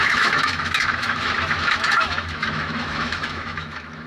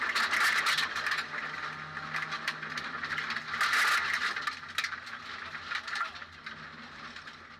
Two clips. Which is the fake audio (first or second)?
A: first